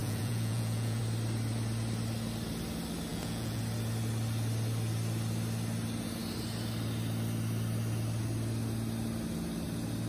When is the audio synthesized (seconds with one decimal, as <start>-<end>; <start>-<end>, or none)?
0.0-1.0; 3.1-3.6